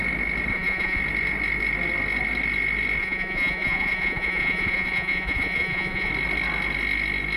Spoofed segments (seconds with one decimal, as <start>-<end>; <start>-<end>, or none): 0.5-1.0; 3.0-6.1